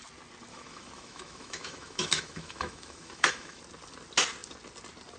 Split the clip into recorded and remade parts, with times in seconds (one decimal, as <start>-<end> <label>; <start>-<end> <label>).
0.0-0.5 recorded; 0.5-3.6 remade; 3.6-5.2 recorded

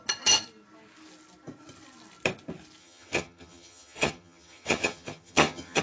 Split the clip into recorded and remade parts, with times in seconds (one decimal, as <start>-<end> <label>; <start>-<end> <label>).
0.0-2.8 recorded; 2.8-5.8 remade

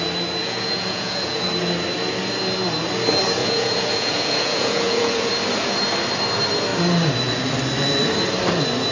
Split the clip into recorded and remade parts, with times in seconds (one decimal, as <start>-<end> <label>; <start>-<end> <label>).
0.0-0.4 recorded; 0.4-1.5 remade; 1.5-3.4 recorded; 3.4-5.3 remade; 5.3-8.9 recorded

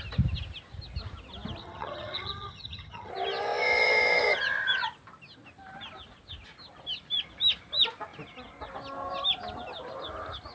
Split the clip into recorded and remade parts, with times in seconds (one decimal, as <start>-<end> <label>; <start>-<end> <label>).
0.0-1.6 recorded; 1.6-3.1 remade; 3.1-10.5 recorded

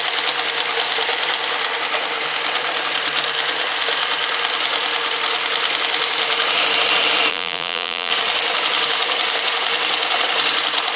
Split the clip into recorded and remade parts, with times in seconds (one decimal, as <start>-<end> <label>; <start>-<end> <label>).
0.0-7.3 recorded; 7.3-8.1 remade; 8.1-11.0 recorded